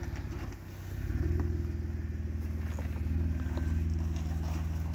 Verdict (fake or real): real